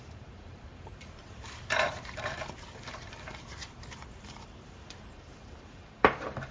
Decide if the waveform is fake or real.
fake